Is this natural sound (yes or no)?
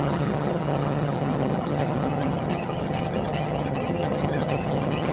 no